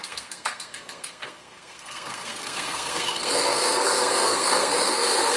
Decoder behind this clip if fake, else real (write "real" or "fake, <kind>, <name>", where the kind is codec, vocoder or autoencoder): fake, codec, SNAC